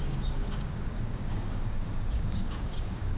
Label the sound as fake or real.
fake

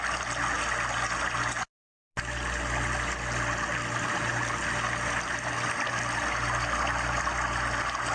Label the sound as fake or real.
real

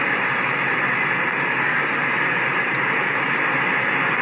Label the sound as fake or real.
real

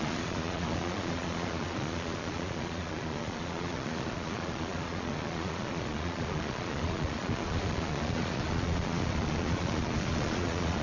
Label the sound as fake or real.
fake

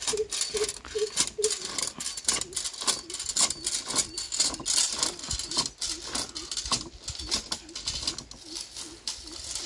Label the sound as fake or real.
real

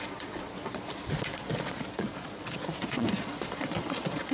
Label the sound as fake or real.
fake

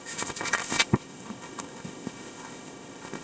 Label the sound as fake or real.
fake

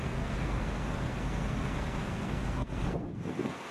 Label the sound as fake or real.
fake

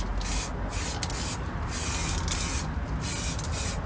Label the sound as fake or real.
real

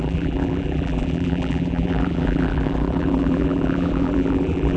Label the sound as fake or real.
fake